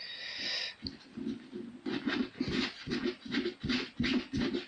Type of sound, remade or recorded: recorded